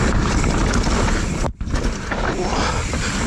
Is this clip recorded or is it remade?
recorded